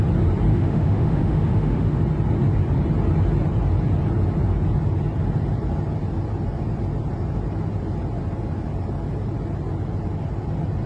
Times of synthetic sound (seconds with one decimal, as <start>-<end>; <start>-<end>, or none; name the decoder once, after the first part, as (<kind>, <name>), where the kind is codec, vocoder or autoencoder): 0.5-2.0 (autoencoder, DAC-VAE)